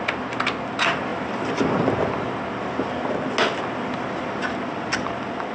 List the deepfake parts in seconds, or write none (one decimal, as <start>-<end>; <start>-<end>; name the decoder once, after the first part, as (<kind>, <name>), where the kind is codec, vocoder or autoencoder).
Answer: none